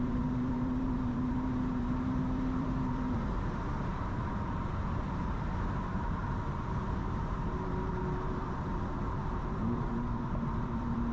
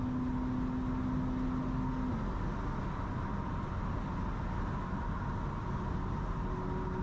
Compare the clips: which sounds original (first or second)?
second